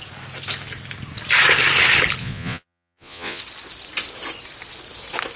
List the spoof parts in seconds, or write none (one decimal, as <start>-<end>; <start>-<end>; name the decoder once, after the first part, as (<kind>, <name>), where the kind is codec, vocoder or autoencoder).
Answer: 2.2-3.4 (vocoder, Vocos)